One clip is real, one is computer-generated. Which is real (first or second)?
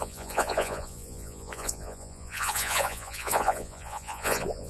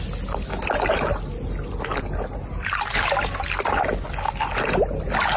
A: second